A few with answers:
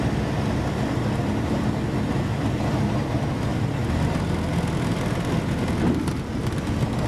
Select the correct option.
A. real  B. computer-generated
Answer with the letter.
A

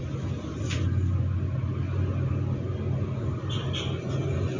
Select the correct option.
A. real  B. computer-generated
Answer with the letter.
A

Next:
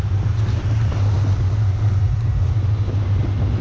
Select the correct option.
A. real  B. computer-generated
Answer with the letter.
A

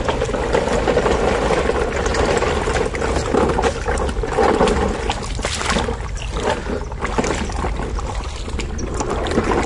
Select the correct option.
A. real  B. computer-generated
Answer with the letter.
A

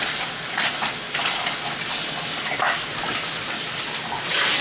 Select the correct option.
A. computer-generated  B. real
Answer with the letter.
B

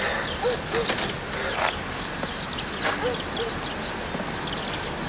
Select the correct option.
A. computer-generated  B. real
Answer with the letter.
B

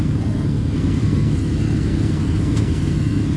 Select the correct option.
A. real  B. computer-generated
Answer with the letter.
B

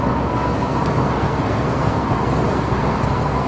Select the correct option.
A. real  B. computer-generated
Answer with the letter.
B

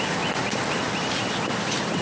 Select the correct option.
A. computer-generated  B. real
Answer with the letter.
B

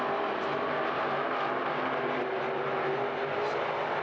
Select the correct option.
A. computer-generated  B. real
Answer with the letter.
B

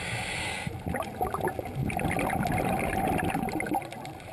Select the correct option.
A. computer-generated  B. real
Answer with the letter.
B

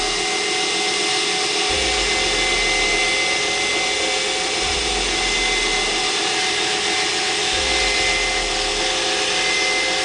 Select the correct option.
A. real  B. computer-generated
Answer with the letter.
A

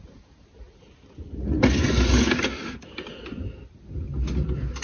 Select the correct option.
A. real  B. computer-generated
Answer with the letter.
A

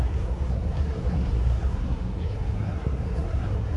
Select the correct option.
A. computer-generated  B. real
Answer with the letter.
A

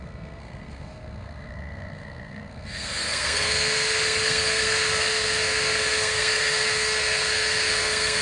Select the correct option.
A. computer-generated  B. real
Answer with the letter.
A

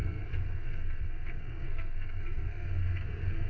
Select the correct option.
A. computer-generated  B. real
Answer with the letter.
A